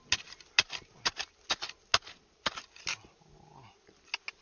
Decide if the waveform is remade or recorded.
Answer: recorded